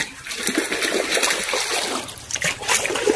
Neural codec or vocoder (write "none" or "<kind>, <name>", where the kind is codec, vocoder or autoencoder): none